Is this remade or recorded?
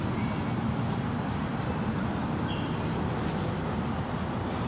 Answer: recorded